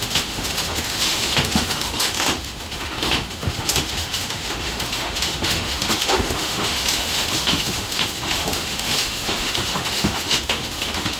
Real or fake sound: fake